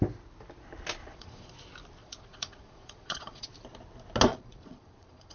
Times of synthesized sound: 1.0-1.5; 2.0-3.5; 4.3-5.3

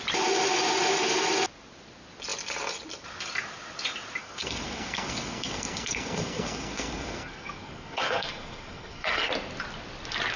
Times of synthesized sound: 4.2-9.3

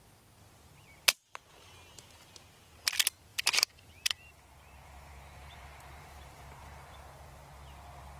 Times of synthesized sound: 3.3-7.4

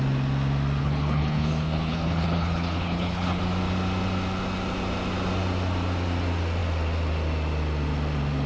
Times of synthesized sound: 0.8-3.4

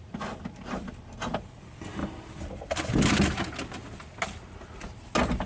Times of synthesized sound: none

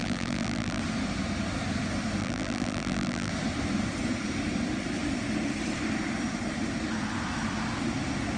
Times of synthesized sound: 0.0-0.8; 2.2-3.3

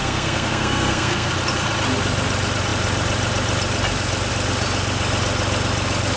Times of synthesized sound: 0.0-1.3